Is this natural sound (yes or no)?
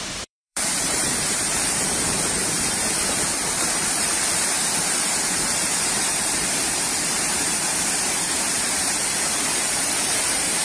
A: no